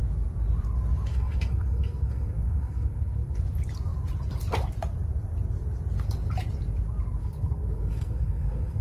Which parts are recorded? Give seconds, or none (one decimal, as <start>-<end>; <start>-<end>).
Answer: 0.0-1.1; 3.4-7.2